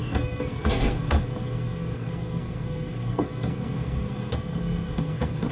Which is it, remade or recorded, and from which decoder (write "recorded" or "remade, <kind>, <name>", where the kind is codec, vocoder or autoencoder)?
remade, codec, SNAC